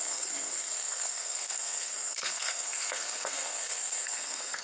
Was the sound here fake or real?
fake